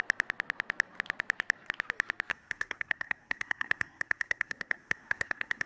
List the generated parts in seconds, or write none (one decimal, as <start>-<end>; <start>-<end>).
2.3-5.7